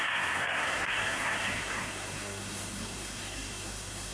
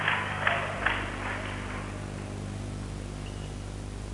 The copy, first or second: first